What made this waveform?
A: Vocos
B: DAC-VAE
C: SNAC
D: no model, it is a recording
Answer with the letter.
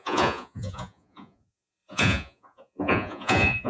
A